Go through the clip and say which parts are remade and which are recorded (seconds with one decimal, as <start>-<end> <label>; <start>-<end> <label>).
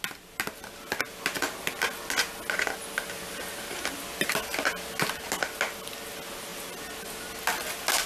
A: 0.0-8.1 recorded